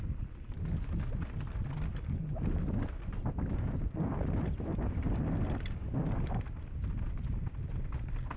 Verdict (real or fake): real